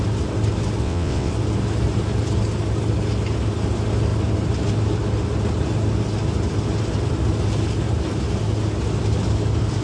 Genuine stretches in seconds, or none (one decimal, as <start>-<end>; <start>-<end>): 0.0-0.8; 1.3-9.8